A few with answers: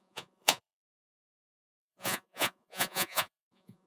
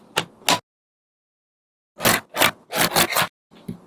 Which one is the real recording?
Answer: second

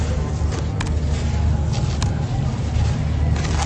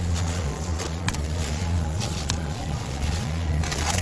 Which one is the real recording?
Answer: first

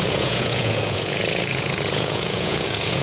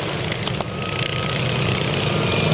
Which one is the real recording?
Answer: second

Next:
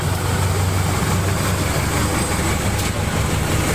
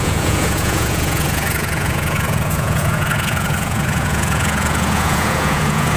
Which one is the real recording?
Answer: first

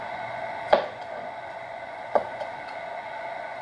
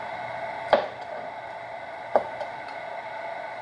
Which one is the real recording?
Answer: second